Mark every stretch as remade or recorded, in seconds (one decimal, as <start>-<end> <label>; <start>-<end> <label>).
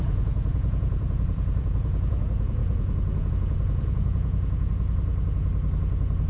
0.0-5.1 remade; 5.1-6.3 recorded